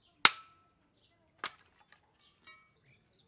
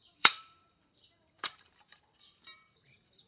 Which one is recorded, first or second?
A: first